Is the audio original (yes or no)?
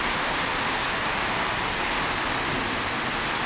yes